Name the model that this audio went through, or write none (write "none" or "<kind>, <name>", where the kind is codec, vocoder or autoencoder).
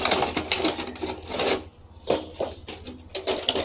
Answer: none